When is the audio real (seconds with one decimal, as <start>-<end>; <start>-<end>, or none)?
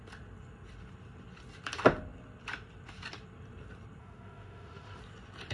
0.0-4.0; 5.0-5.5